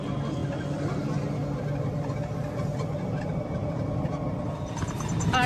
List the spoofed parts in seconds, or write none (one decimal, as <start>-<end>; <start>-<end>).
none